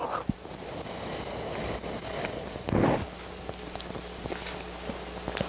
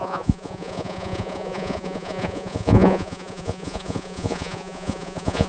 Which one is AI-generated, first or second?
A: second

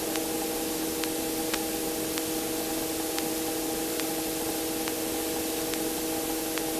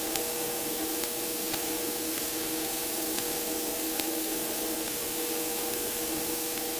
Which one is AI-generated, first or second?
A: second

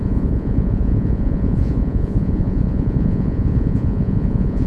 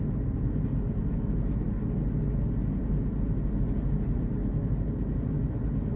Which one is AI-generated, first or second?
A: first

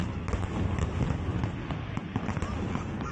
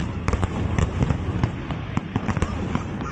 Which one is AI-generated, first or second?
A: second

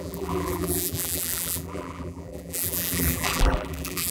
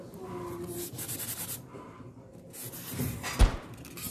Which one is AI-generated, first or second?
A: first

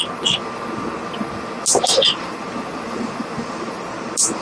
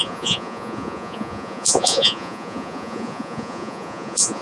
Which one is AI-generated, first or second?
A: second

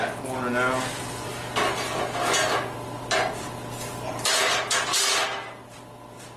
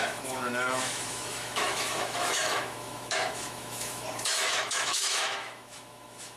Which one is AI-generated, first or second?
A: second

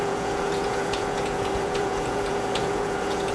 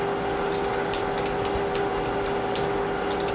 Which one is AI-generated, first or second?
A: first